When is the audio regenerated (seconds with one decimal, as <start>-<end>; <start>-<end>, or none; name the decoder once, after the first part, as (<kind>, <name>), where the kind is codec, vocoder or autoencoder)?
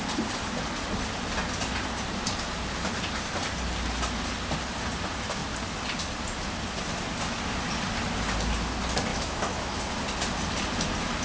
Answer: 9.1-9.8 (autoencoder, DAC-VAE)